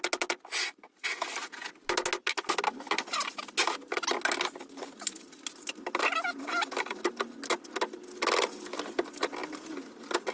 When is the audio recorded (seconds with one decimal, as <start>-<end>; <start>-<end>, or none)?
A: 0.0-10.3